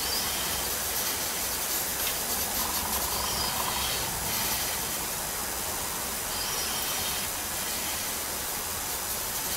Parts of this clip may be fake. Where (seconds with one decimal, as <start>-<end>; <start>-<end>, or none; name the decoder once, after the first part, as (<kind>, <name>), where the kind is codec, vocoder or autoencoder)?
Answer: none